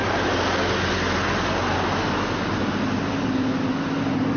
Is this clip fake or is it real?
real